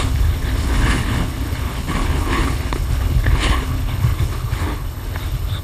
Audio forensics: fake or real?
fake